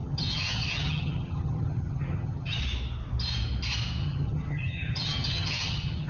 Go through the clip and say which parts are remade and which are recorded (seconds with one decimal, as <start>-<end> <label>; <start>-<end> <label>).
0.0-2.6 remade; 2.6-4.0 recorded; 4.0-6.1 remade